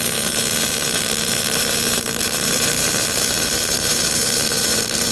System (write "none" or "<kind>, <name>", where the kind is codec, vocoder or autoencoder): vocoder, BigVGAN v2